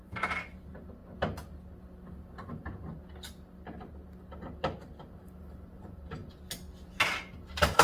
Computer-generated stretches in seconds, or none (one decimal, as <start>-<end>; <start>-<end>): 0.0-1.0; 5.2-6.2; 6.9-7.8